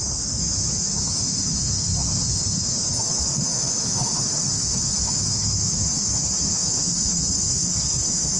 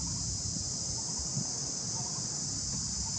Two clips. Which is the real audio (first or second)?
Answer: second